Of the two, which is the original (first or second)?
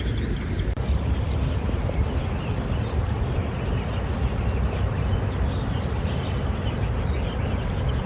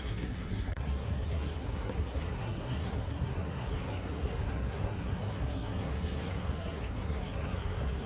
first